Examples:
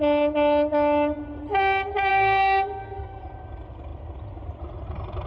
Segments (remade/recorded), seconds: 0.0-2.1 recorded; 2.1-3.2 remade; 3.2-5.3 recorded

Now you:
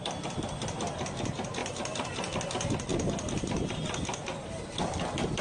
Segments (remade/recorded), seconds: 0.0-1.6 remade; 1.6-2.3 recorded; 2.3-5.4 remade

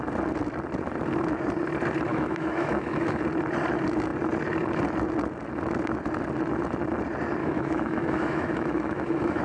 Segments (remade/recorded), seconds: 0.0-2.1 recorded; 2.1-3.2 remade; 3.2-7.4 recorded; 7.4-9.4 remade